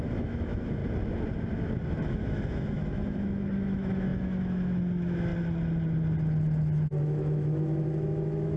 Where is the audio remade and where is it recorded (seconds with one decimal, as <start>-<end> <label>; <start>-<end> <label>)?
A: 0.0-0.8 remade; 0.8-1.9 recorded; 1.9-5.3 remade; 5.3-7.0 recorded; 7.0-8.6 remade

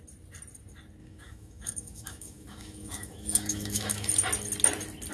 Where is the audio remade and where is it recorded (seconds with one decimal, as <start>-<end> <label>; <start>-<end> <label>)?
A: 0.0-1.0 recorded; 1.0-4.1 remade; 4.1-5.1 recorded

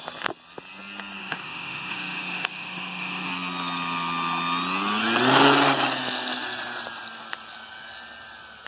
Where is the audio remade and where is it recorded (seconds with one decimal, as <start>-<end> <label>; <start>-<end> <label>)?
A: 0.0-1.2 recorded; 1.2-3.3 remade; 3.3-8.7 recorded

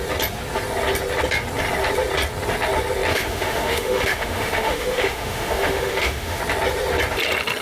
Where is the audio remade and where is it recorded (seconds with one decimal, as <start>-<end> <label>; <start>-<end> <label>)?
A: 0.0-3.1 recorded; 3.1-6.4 remade; 6.4-7.6 recorded

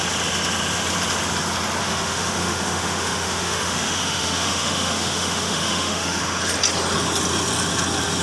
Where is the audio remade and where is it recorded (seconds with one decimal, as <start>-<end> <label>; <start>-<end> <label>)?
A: 0.0-1.8 recorded; 1.8-6.2 remade; 6.2-8.2 recorded

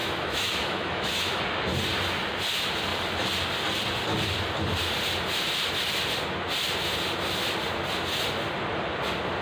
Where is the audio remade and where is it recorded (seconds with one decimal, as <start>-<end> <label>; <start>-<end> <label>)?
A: 0.0-1.4 remade; 1.4-9.4 recorded